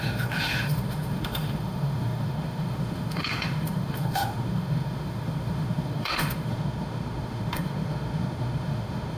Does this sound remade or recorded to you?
remade